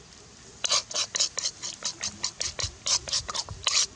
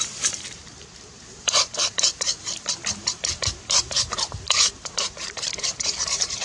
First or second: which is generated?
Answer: second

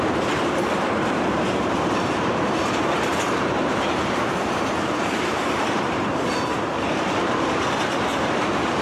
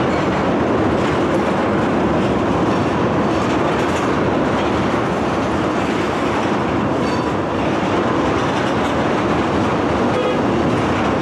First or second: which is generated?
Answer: first